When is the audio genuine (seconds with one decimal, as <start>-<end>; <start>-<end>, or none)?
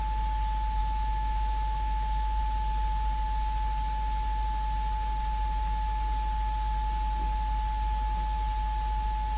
0.0-0.8; 2.4-9.4